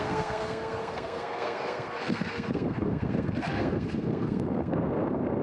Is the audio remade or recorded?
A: remade